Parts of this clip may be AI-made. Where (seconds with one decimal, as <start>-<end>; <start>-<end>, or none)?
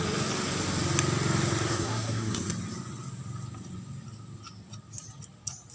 1.7-2.5